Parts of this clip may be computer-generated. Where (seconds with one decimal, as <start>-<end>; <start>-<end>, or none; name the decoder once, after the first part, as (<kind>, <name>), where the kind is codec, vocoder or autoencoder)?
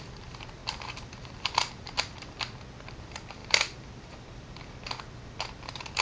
0.0-6.0 (vocoder, BigVGAN v2)